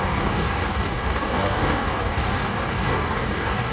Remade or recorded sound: remade